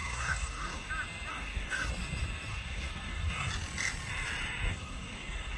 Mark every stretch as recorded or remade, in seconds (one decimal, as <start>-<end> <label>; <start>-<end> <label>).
0.0-0.9 remade; 0.9-1.3 recorded; 1.3-1.9 remade; 1.9-2.5 recorded; 2.5-3.5 remade; 3.5-4.7 recorded; 4.7-5.6 remade